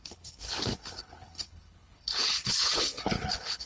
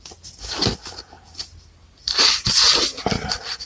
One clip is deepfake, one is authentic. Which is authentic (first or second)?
second